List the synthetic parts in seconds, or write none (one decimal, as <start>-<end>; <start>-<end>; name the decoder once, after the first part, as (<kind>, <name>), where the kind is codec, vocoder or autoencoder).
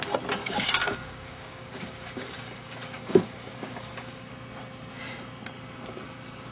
0.4-4.3 (codec, DAC)